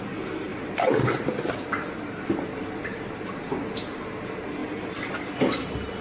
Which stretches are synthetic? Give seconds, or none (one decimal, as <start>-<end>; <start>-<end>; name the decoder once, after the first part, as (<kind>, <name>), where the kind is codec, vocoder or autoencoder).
0.5-2.0 (vocoder, BigVGAN v2)

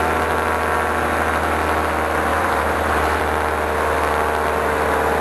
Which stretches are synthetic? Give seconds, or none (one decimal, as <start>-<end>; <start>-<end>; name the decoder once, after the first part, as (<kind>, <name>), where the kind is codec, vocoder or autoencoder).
2.3-3.2 (vocoder, BigVGAN v2)

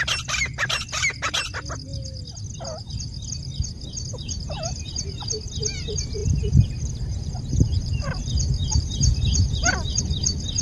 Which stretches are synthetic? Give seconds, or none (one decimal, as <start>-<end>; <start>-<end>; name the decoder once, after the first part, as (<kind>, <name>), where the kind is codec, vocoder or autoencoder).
4.1-5.0 (vocoder, BigVGAN v2); 6.2-10.0

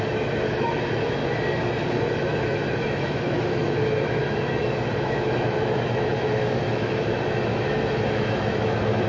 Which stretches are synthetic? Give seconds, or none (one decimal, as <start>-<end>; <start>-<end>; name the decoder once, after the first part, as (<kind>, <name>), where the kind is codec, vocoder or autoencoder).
0.0-1.2 (autoencoder, DAC-VAE); 1.8-9.1

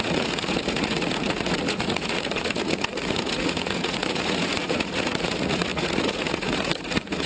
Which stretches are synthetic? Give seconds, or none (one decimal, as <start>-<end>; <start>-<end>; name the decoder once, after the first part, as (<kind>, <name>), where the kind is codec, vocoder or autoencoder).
0.0-7.3 (vocoder, Vocos)

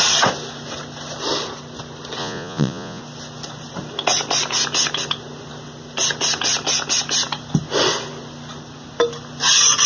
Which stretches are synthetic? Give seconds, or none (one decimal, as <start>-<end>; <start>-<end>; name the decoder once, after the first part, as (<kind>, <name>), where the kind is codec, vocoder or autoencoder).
2.2-3.0 (vocoder, Vocos)